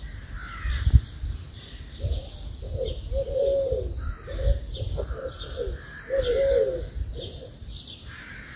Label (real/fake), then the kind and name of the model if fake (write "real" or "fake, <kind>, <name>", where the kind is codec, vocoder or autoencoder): real